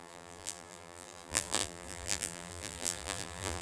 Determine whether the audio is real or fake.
fake